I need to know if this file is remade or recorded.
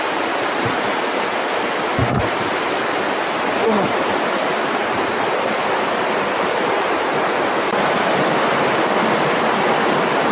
recorded